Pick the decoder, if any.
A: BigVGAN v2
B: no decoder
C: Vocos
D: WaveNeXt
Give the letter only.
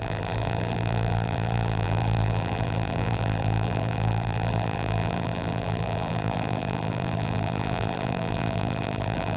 A